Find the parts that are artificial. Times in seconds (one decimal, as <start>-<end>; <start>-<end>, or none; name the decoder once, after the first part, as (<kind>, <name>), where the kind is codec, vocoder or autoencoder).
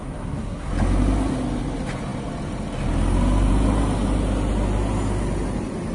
0.0-0.7 (codec, SNAC)